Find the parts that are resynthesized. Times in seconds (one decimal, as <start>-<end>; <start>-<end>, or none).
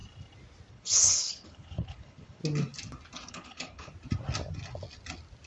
0.7-2.4; 3.3-3.9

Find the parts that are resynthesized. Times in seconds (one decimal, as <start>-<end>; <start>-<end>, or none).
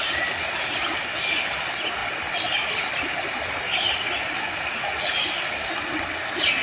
none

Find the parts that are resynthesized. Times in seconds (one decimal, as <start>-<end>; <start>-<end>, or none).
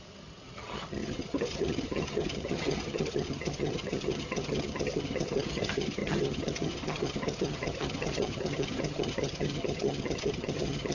0.0-10.9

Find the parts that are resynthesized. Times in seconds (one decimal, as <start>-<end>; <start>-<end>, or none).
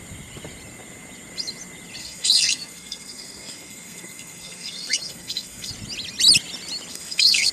2.0-5.7; 6.9-7.5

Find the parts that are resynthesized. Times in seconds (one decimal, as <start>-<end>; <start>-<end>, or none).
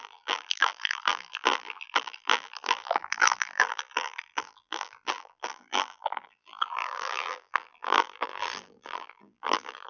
0.0-9.9